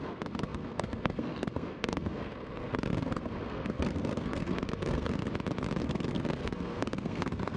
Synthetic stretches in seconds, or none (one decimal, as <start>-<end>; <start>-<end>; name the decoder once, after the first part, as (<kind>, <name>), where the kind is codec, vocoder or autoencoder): 0.0-5.2 (codec, SNAC); 5.8-7.6